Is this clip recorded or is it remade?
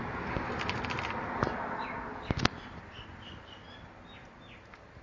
recorded